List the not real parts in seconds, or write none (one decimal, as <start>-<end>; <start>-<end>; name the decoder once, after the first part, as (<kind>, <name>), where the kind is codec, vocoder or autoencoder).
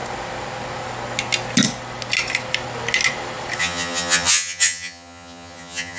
3.6-6.0 (vocoder, HiFi-GAN)